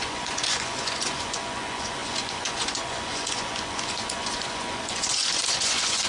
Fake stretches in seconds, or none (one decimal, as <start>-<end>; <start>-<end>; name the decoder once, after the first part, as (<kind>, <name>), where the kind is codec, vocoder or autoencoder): 0.0-6.1 (vocoder, Vocos)